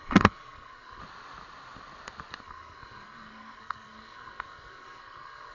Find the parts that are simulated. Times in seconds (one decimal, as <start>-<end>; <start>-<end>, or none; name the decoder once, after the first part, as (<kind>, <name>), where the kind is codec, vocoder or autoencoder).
0.0-1.0 (codec, SNAC); 2.4-5.5